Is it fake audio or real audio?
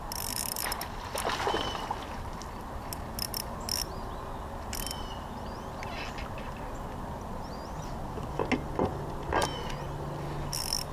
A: real